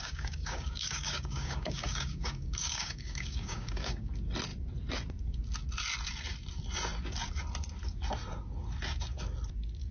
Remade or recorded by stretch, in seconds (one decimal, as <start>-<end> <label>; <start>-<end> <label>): 0.0-4.1 remade; 4.1-9.9 recorded